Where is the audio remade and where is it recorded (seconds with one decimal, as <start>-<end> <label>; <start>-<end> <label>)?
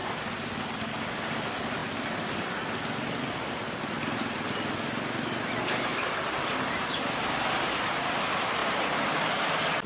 0.0-0.6 remade; 0.6-9.9 recorded